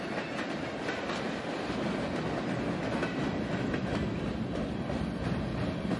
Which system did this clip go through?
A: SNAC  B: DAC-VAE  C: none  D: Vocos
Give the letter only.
C